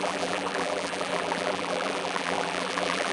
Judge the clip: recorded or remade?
remade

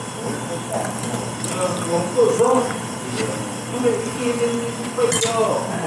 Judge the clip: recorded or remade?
remade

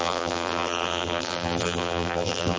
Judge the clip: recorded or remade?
remade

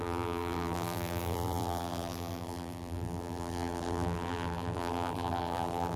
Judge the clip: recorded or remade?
remade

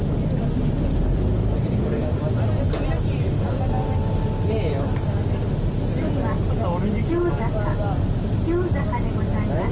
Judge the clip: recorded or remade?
recorded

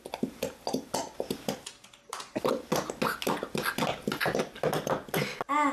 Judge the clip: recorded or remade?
recorded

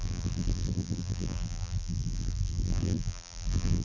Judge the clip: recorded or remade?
remade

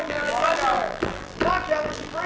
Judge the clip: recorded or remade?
remade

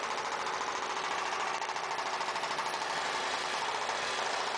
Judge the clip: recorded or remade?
recorded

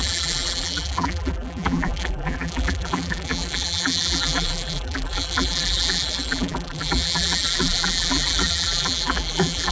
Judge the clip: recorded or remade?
remade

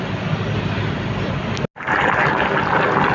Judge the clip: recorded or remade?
recorded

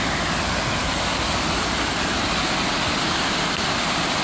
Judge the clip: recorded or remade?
recorded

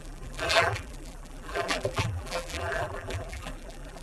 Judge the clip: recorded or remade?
remade